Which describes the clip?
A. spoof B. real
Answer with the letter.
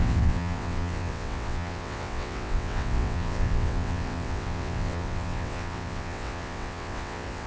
A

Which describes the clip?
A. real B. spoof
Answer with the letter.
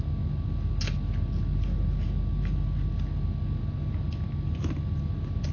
A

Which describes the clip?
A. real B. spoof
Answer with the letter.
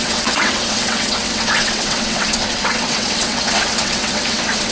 B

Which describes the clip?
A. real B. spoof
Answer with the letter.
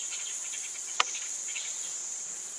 B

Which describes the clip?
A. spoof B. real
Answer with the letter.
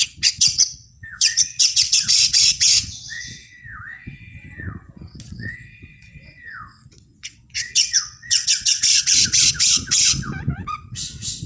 A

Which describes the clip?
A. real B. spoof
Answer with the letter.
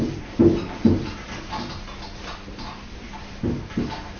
A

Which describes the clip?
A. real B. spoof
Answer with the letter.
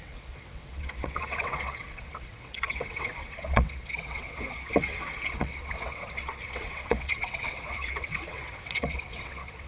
B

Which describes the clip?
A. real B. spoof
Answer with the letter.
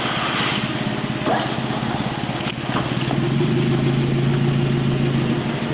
A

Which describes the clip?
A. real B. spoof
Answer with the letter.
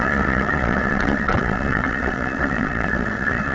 B